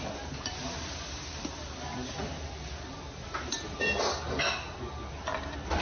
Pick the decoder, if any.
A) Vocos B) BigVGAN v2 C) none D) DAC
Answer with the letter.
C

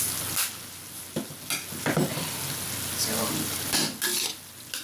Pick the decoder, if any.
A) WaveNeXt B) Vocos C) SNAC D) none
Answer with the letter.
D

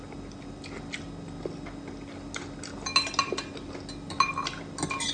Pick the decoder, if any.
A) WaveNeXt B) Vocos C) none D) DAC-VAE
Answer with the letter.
C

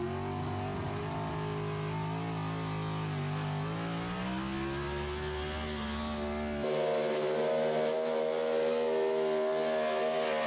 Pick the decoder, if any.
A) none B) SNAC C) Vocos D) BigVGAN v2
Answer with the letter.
A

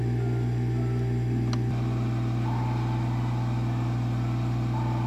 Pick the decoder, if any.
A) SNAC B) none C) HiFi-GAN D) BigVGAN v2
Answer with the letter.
B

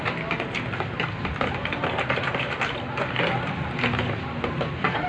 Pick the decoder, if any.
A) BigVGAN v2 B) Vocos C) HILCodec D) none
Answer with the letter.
D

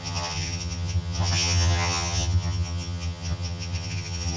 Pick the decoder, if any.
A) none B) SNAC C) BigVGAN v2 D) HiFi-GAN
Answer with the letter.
D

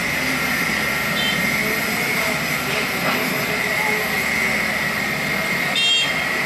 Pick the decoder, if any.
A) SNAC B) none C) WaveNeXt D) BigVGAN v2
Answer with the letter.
B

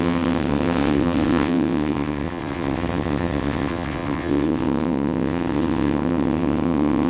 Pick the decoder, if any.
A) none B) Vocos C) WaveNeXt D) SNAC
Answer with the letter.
C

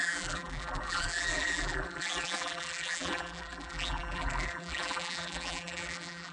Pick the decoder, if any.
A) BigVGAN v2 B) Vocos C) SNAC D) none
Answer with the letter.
A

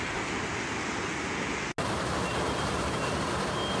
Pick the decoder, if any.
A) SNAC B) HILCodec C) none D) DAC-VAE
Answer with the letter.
C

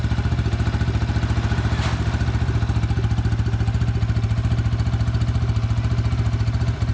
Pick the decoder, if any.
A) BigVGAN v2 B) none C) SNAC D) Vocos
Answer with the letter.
B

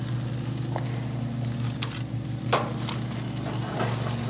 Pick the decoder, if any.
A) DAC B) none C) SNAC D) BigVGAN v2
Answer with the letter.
B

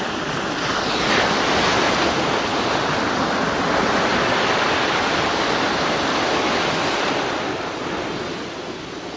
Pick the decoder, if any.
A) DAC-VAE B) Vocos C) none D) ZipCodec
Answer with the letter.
C